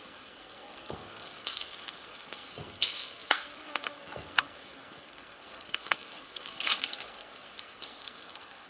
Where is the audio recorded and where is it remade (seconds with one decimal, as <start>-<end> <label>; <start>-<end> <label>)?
0.0-8.7 remade